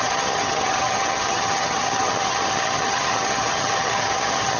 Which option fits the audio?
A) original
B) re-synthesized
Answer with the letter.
B